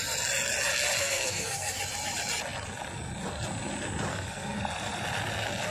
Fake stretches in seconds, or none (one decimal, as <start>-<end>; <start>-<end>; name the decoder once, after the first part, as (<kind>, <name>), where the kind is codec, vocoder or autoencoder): 1.0-1.8 (codec, SNAC); 4.1-4.6